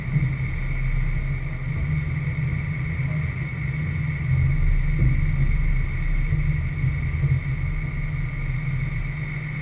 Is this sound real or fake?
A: real